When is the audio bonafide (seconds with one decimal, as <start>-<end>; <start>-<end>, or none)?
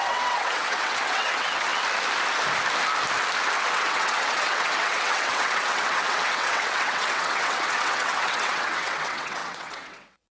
1.7-3.6